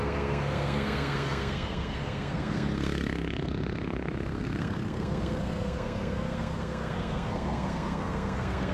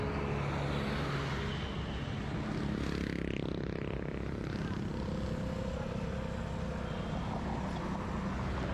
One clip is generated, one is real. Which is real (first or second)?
second